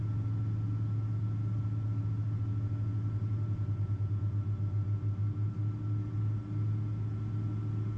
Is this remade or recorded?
recorded